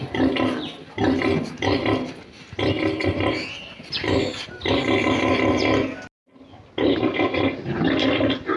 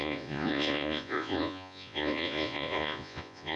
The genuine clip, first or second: first